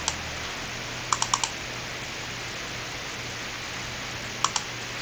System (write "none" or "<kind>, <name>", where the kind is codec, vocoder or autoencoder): none